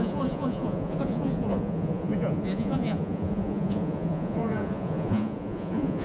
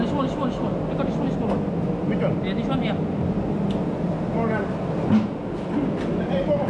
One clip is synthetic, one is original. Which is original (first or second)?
second